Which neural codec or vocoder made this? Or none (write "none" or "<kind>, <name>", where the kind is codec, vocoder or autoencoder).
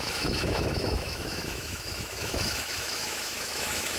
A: autoencoder, DAC-VAE